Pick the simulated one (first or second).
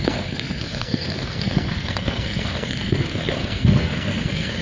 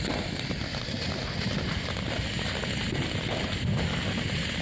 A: first